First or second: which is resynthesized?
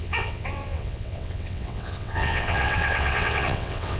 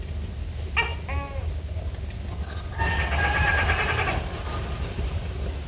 first